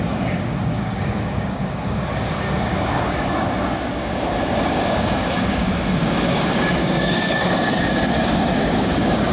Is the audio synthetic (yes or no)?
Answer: yes